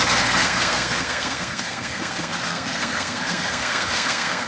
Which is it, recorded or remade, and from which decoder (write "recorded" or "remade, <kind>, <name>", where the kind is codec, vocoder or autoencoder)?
remade, codec, SNAC